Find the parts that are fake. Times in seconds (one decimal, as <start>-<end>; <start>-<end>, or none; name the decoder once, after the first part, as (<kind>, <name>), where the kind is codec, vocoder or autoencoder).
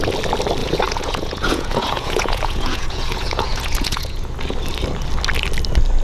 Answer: 0.6-4.2 (vocoder, Vocos)